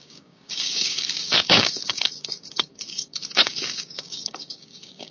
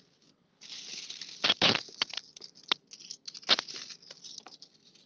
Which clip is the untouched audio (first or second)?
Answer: second